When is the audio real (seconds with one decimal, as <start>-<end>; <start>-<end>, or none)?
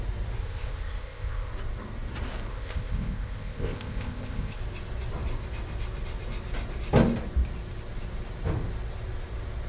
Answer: 0.0-0.4; 1.5-2.5; 4.6-9.7